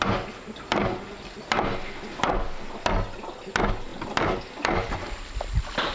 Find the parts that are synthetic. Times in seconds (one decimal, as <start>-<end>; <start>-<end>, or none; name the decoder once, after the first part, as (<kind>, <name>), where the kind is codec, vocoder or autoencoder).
none